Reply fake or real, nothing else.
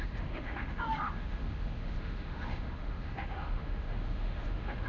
fake